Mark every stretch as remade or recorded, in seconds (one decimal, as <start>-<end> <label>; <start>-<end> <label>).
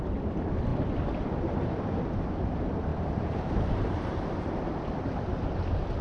0.0-2.9 recorded; 2.9-4.7 remade; 4.7-6.0 recorded